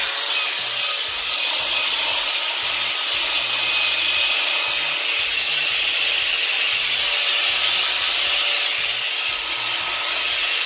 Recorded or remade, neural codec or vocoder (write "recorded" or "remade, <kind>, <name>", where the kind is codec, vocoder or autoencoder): recorded